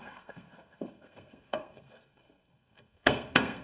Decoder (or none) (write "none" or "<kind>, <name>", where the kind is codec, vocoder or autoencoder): codec, SNAC